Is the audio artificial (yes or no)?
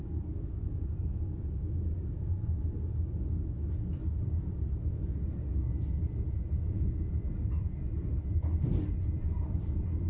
no